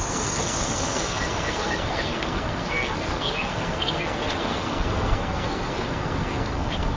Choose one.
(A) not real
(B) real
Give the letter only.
A